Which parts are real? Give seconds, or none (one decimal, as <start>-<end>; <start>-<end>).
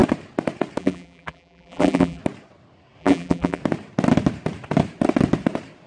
0.0-0.8; 2.2-3.0; 3.6-5.9